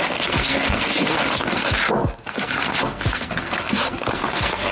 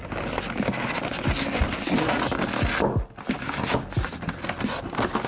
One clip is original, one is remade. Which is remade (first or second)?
first